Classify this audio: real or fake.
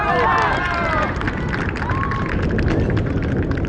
real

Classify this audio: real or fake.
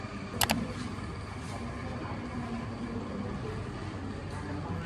real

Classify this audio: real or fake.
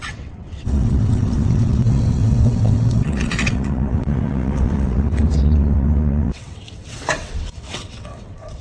fake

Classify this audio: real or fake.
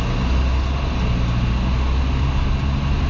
real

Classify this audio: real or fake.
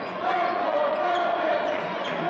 fake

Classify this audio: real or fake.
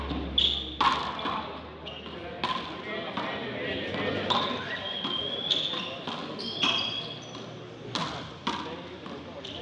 real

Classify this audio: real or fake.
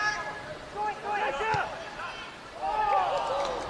real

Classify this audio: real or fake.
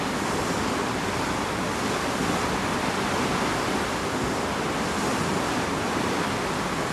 real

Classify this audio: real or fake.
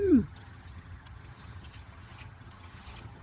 fake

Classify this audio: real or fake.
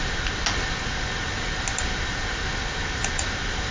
real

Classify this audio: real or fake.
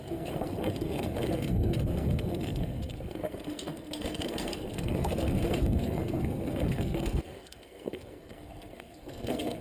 fake